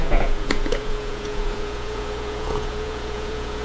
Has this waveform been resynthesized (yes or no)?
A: yes